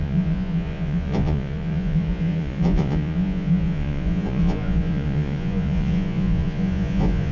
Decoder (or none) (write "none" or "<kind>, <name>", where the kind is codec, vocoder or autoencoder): vocoder, Vocos